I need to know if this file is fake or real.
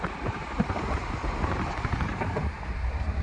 fake